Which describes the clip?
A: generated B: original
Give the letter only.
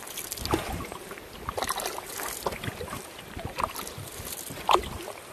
B